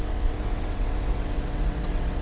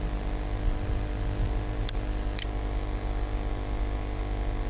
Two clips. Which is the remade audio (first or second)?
first